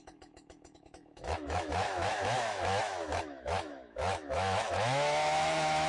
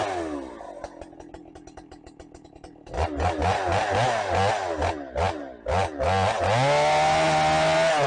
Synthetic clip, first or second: first